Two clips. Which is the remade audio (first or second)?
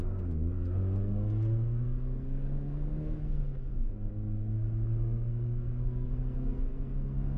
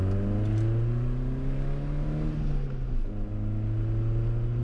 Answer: first